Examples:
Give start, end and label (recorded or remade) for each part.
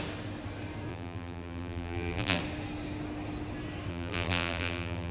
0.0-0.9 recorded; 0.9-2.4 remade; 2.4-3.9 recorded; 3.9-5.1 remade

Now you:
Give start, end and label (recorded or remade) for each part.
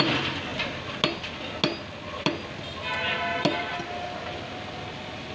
0.0-5.3 recorded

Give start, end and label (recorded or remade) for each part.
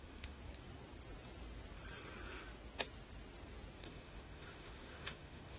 0.0-0.4 remade; 0.4-3.8 recorded; 3.8-5.6 remade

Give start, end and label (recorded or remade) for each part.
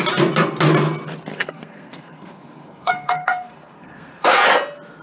0.0-1.3 recorded; 1.3-4.3 remade; 4.3-5.0 recorded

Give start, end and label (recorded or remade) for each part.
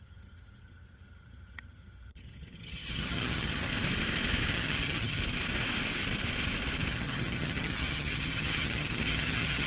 0.0-3.7 remade; 3.7-4.5 recorded; 4.5-5.2 remade; 5.2-6.9 recorded; 6.9-9.7 remade